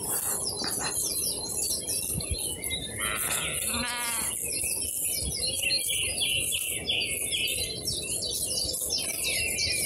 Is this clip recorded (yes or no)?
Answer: yes